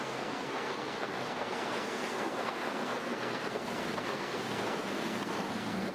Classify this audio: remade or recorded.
remade